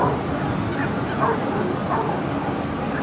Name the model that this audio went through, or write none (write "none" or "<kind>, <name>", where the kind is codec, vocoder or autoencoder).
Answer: none